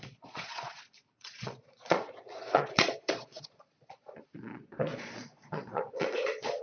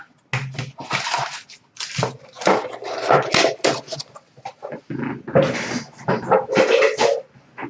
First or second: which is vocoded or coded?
first